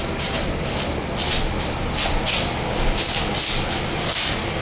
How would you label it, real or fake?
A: real